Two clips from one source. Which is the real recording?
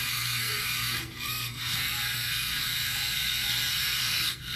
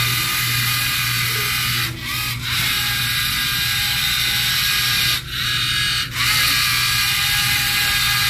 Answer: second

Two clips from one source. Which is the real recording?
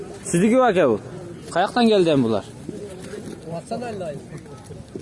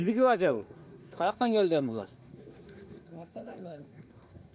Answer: first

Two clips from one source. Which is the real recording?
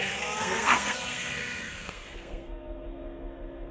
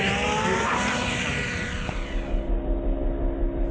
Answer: second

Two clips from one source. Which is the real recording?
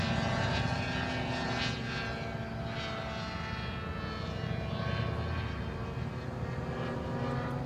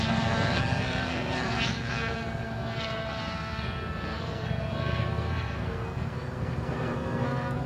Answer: first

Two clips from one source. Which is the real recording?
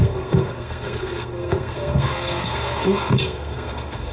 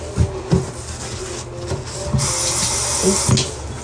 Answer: second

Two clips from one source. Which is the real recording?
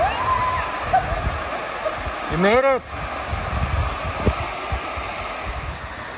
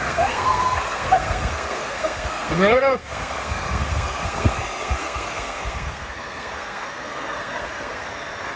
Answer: first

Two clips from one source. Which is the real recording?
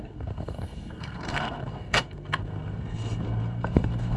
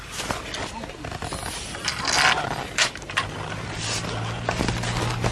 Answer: second